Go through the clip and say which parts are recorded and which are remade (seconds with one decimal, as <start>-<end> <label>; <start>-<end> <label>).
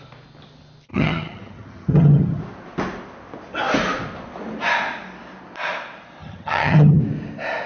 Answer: 0.0-0.9 recorded; 0.9-2.4 remade; 2.4-6.2 recorded; 6.2-7.0 remade; 7.0-7.7 recorded